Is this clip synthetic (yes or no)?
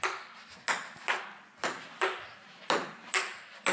no